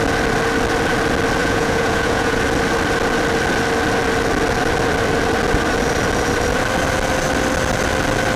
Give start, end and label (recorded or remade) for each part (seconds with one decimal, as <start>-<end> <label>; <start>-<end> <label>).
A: 0.0-1.4 recorded; 1.4-2.4 remade; 2.4-8.4 recorded